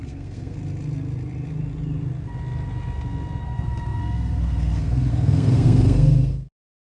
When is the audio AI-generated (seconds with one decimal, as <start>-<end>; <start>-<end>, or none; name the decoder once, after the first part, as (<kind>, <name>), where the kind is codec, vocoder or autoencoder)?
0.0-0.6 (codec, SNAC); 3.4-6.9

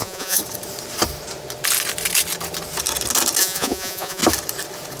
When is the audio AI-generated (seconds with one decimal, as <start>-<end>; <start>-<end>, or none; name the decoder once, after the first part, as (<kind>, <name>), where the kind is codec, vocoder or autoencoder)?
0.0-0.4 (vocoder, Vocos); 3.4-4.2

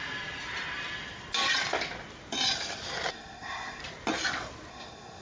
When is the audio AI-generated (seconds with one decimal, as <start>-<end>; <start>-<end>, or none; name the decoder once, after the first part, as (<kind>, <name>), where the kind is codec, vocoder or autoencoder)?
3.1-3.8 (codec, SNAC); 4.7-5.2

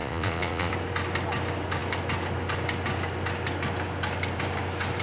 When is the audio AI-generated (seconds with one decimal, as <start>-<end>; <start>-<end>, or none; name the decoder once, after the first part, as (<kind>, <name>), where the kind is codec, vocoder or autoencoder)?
0.0-0.7 (vocoder, Vocos)

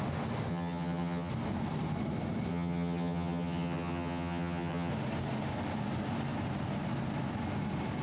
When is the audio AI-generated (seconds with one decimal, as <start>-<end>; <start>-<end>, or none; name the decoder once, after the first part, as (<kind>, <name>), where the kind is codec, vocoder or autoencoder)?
0.5-1.3 (vocoder, HiFi-GAN); 2.5-4.9

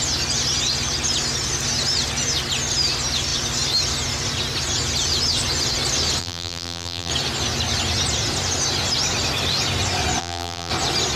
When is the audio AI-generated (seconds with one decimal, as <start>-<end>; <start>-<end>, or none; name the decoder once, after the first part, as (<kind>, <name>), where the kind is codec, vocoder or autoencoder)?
6.2-7.1 (vocoder, BigVGAN v2); 10.2-10.7

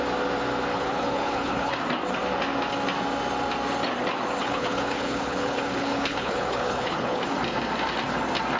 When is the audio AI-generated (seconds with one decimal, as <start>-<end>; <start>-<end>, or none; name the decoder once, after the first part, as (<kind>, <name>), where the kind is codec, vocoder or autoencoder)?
0.7-1.7 (codec, HILCodec); 4.4-7.3

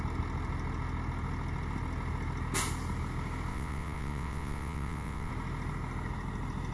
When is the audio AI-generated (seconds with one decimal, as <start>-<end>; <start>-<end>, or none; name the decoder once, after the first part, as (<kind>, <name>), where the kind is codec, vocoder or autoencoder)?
3.5-5.3 (vocoder, WaveNeXt)